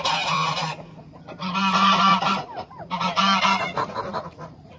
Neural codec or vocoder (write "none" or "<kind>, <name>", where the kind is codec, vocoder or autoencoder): vocoder, Vocos